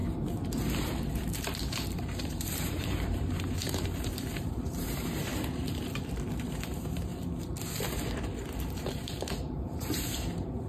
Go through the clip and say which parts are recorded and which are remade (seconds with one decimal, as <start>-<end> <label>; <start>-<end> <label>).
0.0-2.3 recorded; 2.3-5.3 remade; 5.3-6.5 recorded; 6.5-7.1 remade; 7.1-8.9 recorded; 8.9-10.7 remade